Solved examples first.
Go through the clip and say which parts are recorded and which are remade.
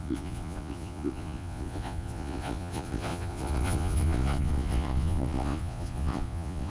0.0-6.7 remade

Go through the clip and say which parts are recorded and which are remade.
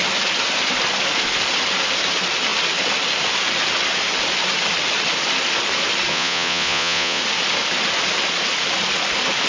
0.0-6.1 recorded; 6.1-7.2 remade; 7.2-9.5 recorded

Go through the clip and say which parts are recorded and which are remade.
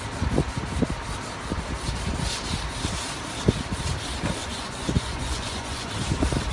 0.0-4.4 recorded; 4.4-5.9 remade; 5.9-6.5 recorded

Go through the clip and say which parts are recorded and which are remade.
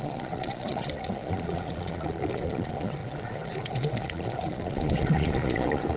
0.0-6.0 remade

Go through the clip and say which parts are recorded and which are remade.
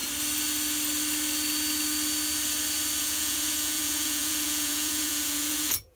0.0-3.0 recorded; 3.0-6.0 remade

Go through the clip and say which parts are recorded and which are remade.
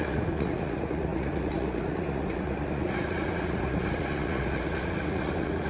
0.0-5.7 remade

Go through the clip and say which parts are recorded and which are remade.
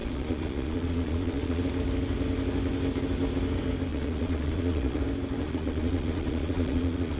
0.0-1.6 remade; 1.6-3.9 recorded; 3.9-5.0 remade; 5.0-5.4 recorded; 5.4-7.2 remade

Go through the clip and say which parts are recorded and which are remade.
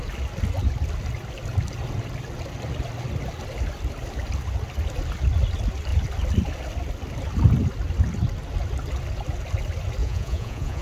0.0-10.0 recorded; 10.0-10.8 remade